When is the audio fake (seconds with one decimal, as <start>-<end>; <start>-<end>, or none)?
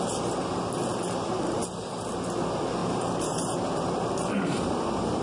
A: 0.9-1.6; 2.8-5.2